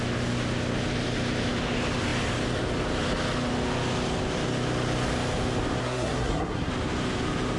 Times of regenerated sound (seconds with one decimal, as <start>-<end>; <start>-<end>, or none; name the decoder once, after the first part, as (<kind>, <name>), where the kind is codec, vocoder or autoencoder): 5.8-6.7 (codec, SNAC)